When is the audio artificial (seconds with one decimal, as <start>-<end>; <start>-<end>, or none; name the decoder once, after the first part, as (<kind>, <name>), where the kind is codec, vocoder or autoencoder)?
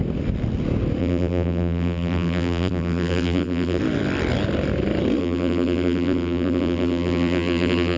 1.0-3.8 (vocoder, BigVGAN v2); 5.2-8.0